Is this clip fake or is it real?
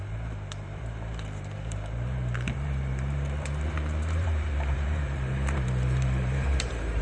fake